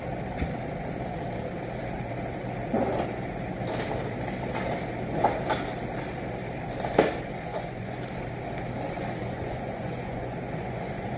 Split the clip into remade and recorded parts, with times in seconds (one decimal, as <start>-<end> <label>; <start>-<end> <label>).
0.0-7.5 recorded; 7.5-8.0 remade; 8.0-9.2 recorded; 9.2-11.2 remade